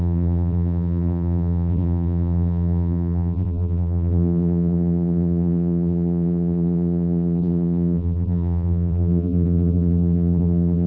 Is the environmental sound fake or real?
fake